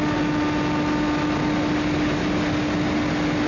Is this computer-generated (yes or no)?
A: no